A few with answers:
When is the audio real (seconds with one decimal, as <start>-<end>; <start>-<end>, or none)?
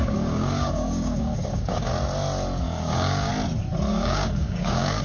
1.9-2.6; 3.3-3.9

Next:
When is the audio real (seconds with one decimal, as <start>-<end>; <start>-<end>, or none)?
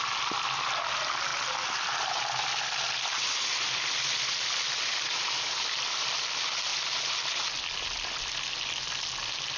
0.0-9.6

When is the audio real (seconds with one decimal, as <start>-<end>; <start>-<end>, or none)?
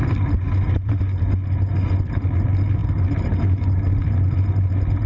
0.0-5.1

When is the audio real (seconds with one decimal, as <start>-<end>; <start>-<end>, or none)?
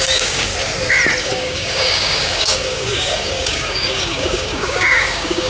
0.5-1.2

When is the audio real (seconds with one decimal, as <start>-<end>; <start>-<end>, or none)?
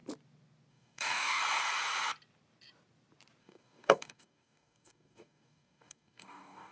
0.0-0.7; 1.4-3.4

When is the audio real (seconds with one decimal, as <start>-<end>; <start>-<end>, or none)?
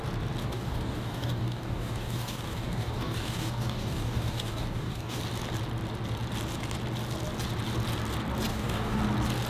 0.0-0.4; 5.2-8.5; 9.0-9.5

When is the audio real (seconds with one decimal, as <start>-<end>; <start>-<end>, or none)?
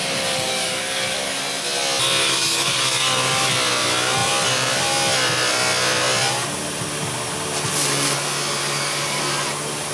1.4-2.2; 3.5-8.6; 9.2-9.9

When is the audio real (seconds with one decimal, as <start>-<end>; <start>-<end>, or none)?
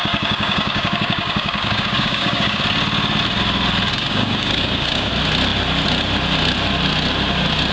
2.6-3.9; 5.1-7.7